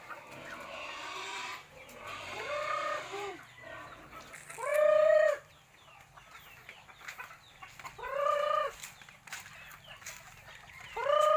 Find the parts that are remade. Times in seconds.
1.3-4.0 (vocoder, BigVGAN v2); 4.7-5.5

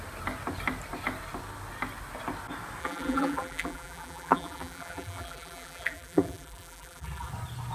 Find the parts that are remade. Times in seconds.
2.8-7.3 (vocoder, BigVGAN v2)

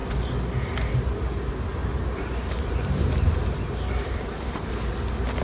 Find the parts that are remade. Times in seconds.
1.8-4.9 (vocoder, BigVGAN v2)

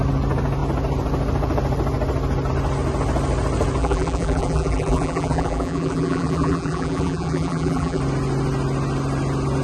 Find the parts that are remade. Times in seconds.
3.8-8.0 (vocoder, BigVGAN v2)

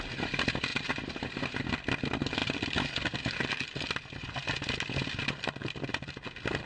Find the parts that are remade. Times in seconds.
0.7-1.4 (vocoder, BigVGAN v2)

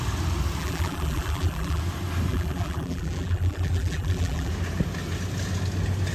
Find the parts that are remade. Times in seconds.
0.6-1.8 (vocoder, BigVGAN v2); 2.3-4.5

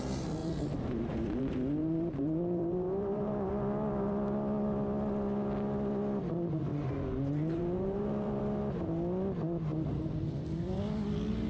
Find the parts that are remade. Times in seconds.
0.4-1.4 (vocoder, BigVGAN v2); 1.8-3.5; 6.7-8.4; 9.7-10.8

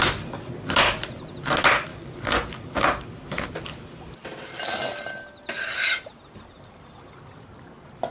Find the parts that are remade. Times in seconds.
none